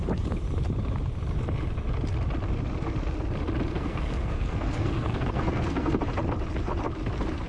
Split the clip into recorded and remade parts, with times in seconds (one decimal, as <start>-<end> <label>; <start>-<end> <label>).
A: 0.0-3.7 recorded; 3.7-6.0 remade; 6.0-7.5 recorded